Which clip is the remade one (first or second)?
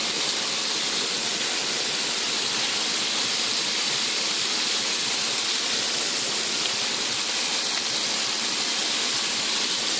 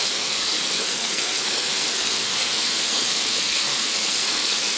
second